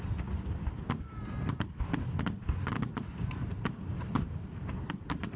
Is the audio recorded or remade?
recorded